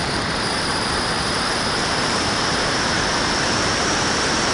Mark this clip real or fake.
fake